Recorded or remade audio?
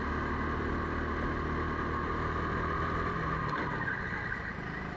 recorded